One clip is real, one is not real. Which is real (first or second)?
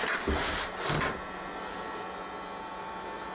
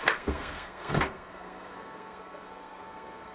first